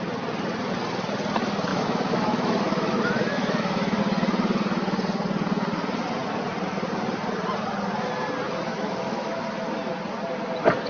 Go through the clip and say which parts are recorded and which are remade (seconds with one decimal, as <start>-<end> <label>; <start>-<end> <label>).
0.0-1.7 recorded; 1.7-4.0 remade; 4.0-8.7 recorded; 8.7-9.4 remade; 9.4-10.9 recorded